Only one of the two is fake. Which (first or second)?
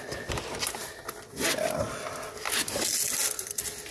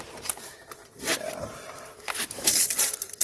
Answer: second